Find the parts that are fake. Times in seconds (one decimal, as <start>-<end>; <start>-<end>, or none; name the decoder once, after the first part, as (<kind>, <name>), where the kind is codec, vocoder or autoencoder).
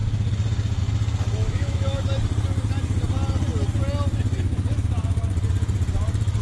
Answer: 1.4-2.0 (autoencoder, DAC-VAE)